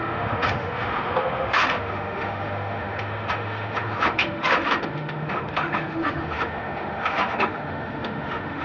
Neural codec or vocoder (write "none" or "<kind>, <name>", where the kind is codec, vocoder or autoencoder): autoencoder, DAC-VAE